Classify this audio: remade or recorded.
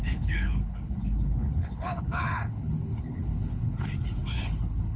remade